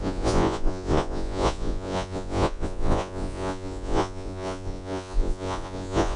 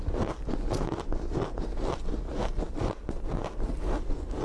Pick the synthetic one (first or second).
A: first